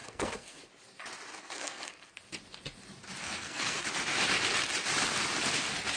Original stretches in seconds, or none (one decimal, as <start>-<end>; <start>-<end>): 0.6-1.3; 2.1-3.2; 3.9-6.0